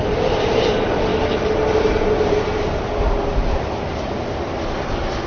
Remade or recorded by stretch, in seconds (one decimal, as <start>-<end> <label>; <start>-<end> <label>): 0.0-5.3 recorded